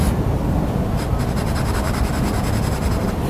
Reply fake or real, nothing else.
real